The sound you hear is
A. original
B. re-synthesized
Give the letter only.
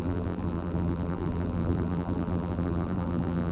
B